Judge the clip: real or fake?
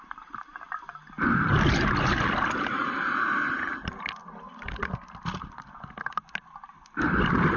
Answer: real